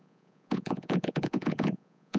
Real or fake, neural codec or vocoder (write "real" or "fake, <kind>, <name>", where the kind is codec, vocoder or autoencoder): fake, vocoder, Vocos